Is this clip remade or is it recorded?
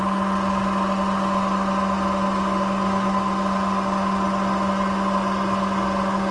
recorded